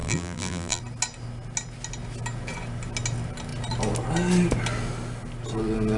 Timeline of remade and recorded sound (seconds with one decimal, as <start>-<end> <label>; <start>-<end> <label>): 0.0-0.8 remade; 0.8-6.0 recorded